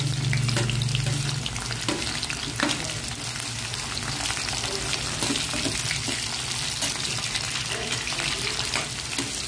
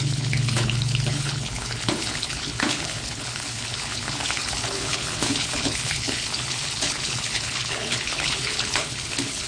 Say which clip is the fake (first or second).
second